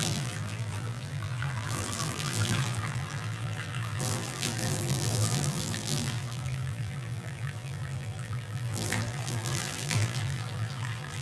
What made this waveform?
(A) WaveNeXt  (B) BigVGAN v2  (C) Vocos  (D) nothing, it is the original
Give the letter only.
B